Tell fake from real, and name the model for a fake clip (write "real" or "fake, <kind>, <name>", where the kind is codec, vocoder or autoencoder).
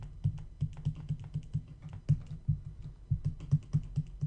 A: real